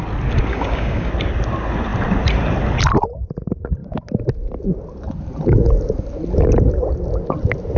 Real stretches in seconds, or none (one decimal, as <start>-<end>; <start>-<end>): 0.0-0.5; 1.1-7.8